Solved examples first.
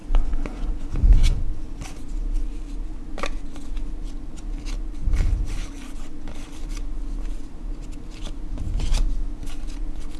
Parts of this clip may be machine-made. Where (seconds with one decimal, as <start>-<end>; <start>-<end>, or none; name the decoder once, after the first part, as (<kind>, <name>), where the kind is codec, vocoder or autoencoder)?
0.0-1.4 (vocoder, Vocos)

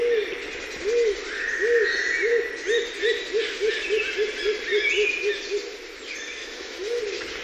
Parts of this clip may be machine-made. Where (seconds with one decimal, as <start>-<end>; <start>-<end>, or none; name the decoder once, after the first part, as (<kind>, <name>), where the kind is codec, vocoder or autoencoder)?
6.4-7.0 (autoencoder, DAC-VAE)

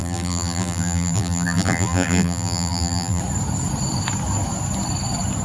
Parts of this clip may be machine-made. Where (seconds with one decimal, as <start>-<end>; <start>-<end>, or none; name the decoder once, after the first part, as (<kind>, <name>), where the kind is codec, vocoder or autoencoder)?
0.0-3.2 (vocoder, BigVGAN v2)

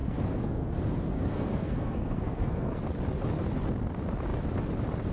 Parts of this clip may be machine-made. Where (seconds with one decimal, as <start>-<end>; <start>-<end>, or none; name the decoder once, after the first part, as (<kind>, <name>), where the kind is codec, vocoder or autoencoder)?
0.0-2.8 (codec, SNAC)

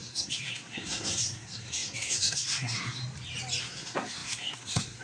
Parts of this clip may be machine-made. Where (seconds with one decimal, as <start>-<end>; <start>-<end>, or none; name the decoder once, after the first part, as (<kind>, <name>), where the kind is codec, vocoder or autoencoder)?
0.0-3.0 (codec, SNAC); 3.6-5.0